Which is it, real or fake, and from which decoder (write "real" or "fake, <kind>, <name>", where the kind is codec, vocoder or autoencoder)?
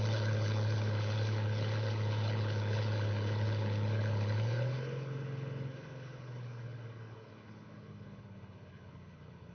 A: fake, codec, HILCodec